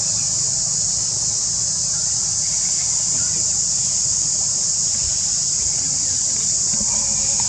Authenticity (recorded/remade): recorded